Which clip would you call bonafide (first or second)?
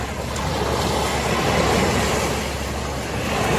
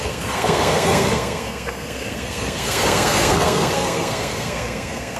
first